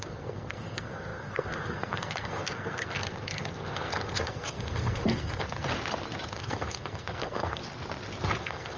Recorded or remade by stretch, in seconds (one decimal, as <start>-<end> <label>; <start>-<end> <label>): 0.0-5.7 remade; 5.7-6.3 recorded; 6.3-7.6 remade; 7.6-8.4 recorded; 8.4-8.8 remade